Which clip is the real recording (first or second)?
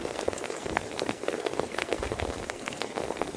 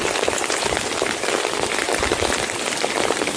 second